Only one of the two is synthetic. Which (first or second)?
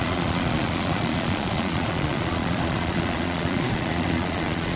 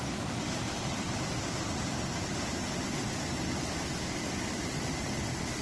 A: first